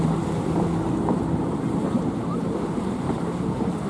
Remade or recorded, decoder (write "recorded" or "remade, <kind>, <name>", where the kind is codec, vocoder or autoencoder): remade, vocoder, BigVGAN v2